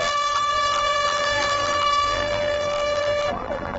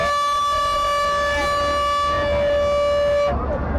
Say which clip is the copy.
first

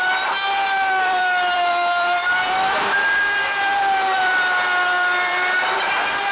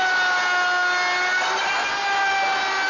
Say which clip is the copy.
first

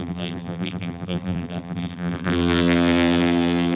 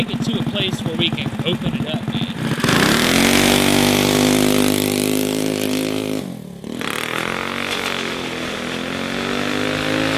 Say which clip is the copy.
first